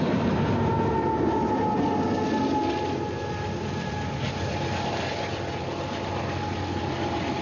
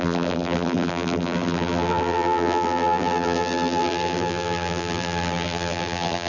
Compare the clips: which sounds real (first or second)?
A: first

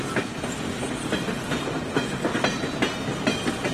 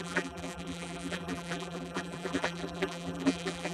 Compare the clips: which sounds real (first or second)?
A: first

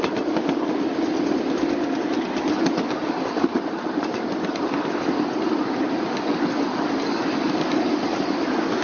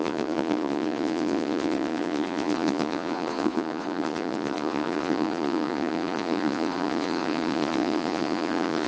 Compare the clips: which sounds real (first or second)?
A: first